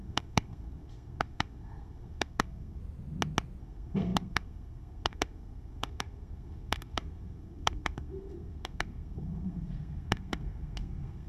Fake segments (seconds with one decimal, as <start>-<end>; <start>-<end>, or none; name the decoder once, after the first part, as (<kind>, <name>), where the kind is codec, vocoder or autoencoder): 0.0-2.8 (codec, SNAC); 3.6-11.3